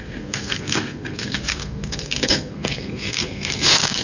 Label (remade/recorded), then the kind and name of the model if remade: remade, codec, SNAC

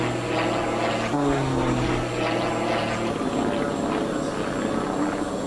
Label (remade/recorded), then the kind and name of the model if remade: recorded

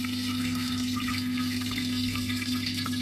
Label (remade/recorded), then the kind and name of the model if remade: remade, codec, SNAC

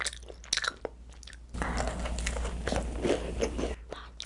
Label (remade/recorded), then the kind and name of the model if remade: recorded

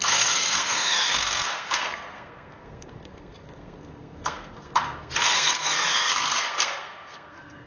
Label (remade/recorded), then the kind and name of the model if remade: remade, codec, SNAC